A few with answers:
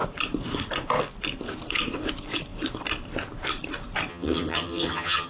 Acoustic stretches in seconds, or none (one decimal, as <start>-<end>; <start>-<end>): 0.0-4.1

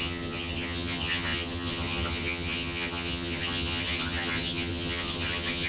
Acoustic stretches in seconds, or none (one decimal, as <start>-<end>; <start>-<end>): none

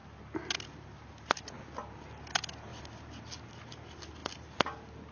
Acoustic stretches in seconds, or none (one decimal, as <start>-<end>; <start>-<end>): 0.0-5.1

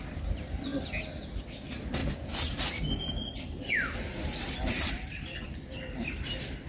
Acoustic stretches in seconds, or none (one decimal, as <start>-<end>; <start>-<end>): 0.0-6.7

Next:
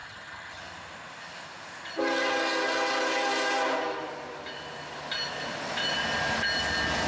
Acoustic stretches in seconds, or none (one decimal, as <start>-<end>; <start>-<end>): 0.6-7.1

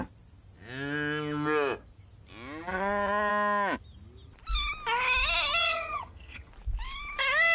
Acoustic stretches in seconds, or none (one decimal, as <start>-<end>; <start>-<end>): 0.0-2.7; 3.3-5.6; 6.5-7.5

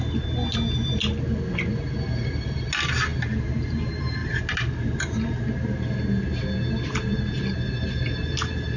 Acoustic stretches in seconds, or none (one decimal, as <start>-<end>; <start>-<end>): 0.0-8.8